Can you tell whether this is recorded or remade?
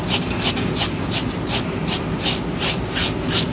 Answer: recorded